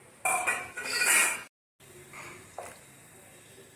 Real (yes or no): yes